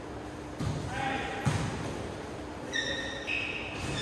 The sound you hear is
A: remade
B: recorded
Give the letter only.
B